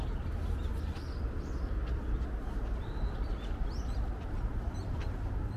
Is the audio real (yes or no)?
yes